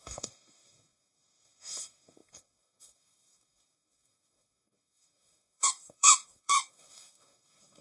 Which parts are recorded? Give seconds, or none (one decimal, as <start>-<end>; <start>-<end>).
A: none